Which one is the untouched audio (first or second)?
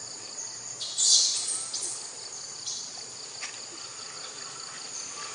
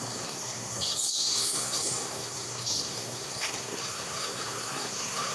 first